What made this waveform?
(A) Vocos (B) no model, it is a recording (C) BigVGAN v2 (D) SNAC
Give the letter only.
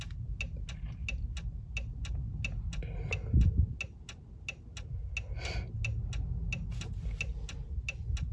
B